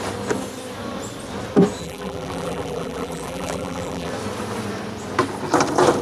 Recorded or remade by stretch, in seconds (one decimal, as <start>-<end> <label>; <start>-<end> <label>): 0.0-1.8 recorded; 1.8-4.1 remade; 4.1-6.0 recorded